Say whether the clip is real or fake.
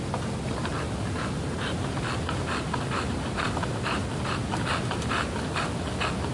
real